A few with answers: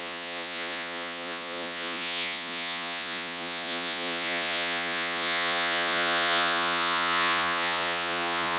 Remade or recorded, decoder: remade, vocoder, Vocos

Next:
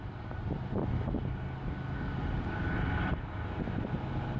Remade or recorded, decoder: recorded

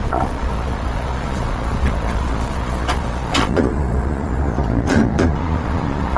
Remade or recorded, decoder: remade, vocoder, Vocos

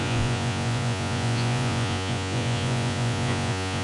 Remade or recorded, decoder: remade, vocoder, Vocos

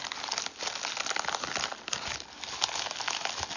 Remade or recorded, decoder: recorded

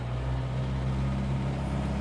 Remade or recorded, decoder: recorded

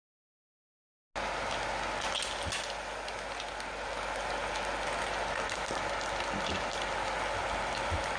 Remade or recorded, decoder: recorded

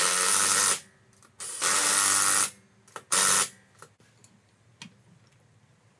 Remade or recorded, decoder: recorded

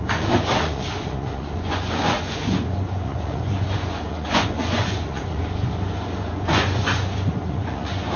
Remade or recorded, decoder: remade, vocoder, Vocos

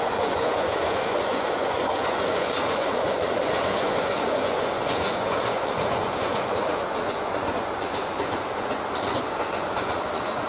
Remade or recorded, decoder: remade, vocoder, Vocos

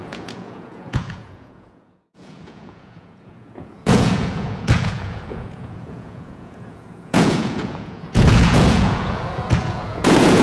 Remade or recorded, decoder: remade, vocoder, Vocos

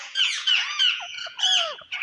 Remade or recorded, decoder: remade, vocoder, Vocos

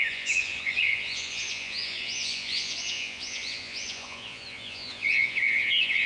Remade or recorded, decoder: remade, vocoder, Vocos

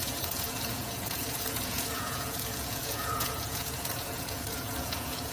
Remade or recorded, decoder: remade, vocoder, Vocos